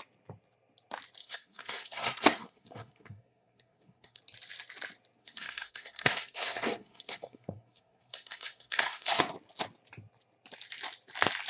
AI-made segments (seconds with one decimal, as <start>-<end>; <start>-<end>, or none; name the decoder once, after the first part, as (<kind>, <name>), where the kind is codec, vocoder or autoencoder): 1.2-4.2 (codec, SNAC); 5.2-9.2

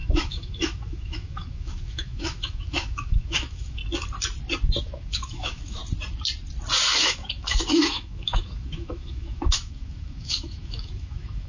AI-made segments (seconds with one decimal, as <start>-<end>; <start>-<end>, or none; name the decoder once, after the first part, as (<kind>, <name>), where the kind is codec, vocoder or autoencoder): 0.0-3.8 (autoencoder, DAC-VAE); 4.8-5.8; 7.0-11.5

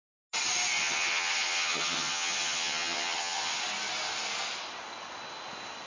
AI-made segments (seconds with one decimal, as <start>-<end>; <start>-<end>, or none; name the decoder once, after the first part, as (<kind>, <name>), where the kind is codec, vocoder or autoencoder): 0.8-3.6 (vocoder, HiFi-GAN)